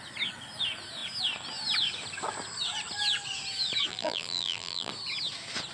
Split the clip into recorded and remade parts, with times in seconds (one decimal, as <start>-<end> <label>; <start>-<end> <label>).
0.0-3.9 recorded; 3.9-4.9 remade; 4.9-5.7 recorded